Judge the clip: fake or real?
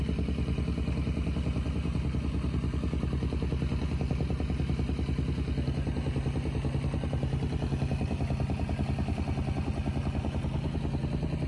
real